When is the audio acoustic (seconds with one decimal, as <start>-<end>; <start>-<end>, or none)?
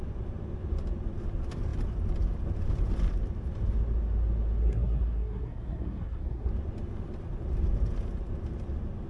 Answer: 0.0-4.6; 6.5-9.1